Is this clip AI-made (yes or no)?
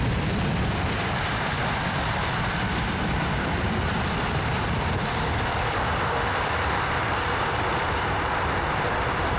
yes